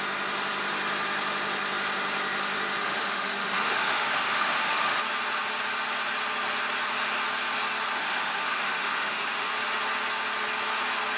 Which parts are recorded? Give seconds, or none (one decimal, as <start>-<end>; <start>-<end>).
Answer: 0.0-2.8; 5.0-8.0; 9.5-11.2